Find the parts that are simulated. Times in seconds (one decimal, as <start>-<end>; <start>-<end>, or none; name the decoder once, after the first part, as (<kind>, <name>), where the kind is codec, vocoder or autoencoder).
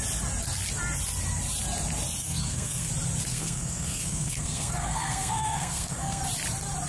2.2-2.9 (codec, SNAC); 3.3-6.2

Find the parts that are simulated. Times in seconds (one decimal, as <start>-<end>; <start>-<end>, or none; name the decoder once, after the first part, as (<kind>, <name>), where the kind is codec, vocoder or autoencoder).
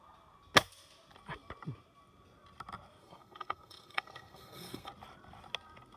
3.0-4.9 (codec, SNAC)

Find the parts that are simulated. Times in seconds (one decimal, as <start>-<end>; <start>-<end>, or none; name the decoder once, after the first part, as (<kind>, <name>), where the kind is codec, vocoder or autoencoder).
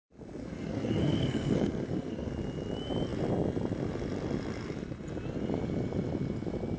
0.4-2.3 (codec, SNAC)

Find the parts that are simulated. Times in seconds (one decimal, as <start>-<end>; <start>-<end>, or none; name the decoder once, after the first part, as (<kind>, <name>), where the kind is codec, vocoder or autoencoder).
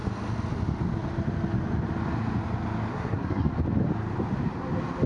2.9-3.5 (codec, SNAC)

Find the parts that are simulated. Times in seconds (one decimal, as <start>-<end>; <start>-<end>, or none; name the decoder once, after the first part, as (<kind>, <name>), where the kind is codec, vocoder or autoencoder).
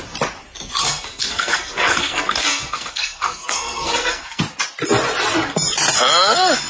0.8-4.4 (codec, SNAC)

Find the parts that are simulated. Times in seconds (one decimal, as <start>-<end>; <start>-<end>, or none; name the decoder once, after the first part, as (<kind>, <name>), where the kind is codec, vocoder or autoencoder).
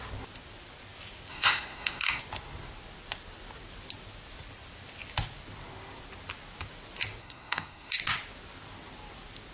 1.3-2.2 (codec, SNAC); 7.2-8.0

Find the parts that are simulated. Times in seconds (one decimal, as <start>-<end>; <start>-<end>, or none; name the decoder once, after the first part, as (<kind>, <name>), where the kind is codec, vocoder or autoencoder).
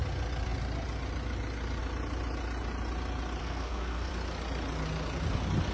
3.4-4.1 (codec, SNAC)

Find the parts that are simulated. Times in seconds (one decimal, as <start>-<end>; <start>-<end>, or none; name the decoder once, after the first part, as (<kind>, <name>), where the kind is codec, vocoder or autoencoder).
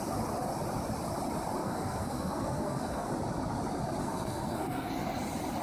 1.6-3.1 (codec, SNAC); 4.0-4.9